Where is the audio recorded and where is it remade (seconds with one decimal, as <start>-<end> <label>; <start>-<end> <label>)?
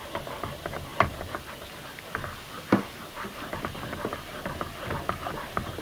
0.0-5.8 recorded